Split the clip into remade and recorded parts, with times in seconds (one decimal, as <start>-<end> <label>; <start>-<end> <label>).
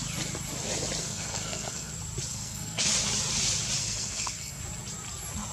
0.0-1.0 recorded; 1.0-1.9 remade; 1.9-2.3 recorded; 2.3-2.9 remade; 2.9-3.8 recorded; 3.8-4.6 remade; 4.6-5.5 recorded